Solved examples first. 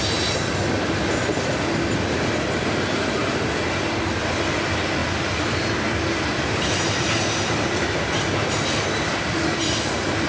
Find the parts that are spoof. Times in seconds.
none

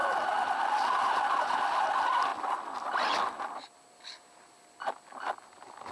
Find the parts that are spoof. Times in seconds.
none

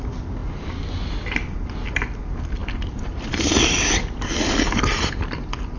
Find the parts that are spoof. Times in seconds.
2.6-4.8 (vocoder, BigVGAN v2)

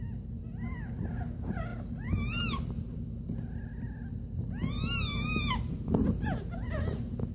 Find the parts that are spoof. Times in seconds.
1.7-2.4 (vocoder, BigVGAN v2)

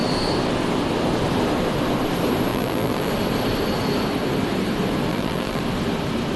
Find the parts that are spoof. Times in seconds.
2.5-3.1 (vocoder, BigVGAN v2); 5.1-5.6

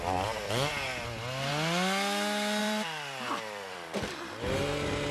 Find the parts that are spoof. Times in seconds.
2.6-4.3 (vocoder, BigVGAN v2)

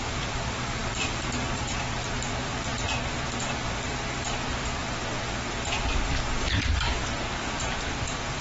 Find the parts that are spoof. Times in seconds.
0.0-4.8 (vocoder, BigVGAN v2); 5.5-8.4